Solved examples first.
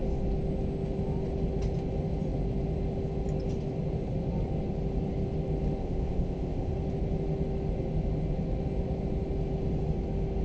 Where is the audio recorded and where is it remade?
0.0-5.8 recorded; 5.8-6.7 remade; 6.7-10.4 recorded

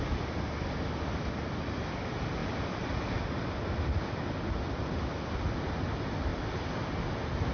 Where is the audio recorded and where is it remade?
0.0-7.5 recorded

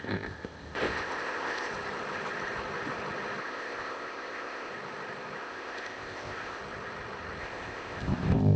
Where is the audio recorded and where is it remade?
0.0-1.7 remade; 1.7-3.4 recorded; 3.4-4.7 remade; 4.7-5.4 recorded; 5.4-6.6 remade; 6.6-7.4 recorded; 7.4-8.6 remade